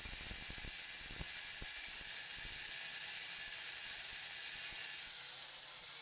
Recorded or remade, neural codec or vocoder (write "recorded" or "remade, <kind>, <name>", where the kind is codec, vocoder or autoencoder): recorded